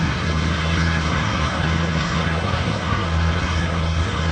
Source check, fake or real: fake